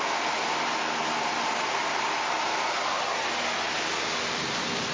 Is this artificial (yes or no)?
no